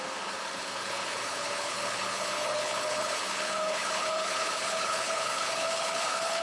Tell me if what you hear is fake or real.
fake